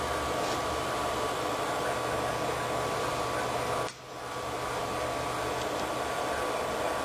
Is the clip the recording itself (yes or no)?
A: yes